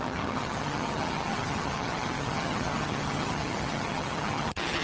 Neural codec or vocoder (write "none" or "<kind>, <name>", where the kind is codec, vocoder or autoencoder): vocoder, HiFi-GAN